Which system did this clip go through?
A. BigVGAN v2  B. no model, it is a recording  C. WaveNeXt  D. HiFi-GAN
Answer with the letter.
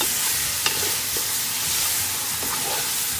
B